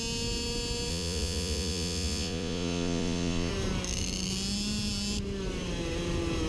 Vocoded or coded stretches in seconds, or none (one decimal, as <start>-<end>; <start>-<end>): 0.9-3.5